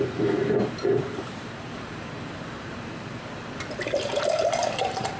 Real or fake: fake